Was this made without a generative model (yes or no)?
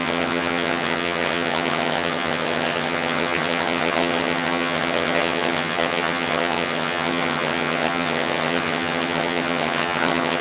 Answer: no